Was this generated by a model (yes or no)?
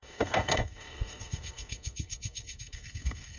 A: yes